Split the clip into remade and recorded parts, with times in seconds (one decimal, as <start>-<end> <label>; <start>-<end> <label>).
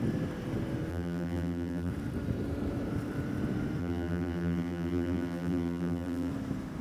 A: 0.0-0.9 recorded; 0.9-1.9 remade; 1.9-3.8 recorded; 3.8-6.3 remade; 6.3-6.8 recorded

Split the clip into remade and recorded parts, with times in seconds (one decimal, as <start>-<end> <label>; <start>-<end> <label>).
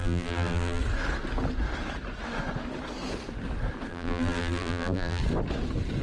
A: 0.0-0.8 remade; 0.8-3.9 recorded; 3.9-5.2 remade; 5.2-6.0 recorded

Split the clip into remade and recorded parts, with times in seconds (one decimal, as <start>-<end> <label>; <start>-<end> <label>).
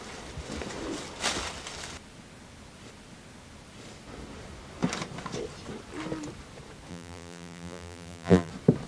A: 0.0-6.9 recorded; 6.9-8.5 remade; 8.5-8.9 recorded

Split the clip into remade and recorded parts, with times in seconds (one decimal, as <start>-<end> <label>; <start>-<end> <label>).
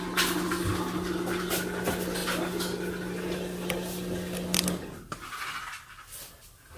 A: 0.0-6.8 recorded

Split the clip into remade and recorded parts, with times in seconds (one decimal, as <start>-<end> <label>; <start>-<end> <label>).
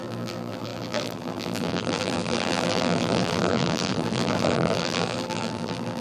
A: 0.0-6.0 remade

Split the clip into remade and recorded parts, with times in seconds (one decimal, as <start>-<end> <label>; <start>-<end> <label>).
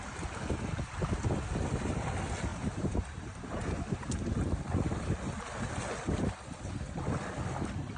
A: 0.0-2.5 recorded; 2.5-4.5 remade; 4.5-8.0 recorded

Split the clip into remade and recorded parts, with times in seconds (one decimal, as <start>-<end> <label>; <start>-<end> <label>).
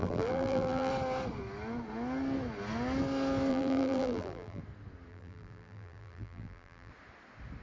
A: 0.0-0.9 remade; 0.9-3.5 recorded; 3.5-4.6 remade; 4.6-5.1 recorded; 5.1-6.9 remade; 6.9-7.6 recorded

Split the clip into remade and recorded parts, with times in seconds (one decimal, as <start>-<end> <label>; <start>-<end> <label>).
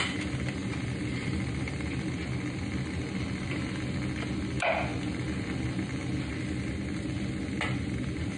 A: 0.0-0.6 recorded; 0.6-2.1 remade; 2.1-8.4 recorded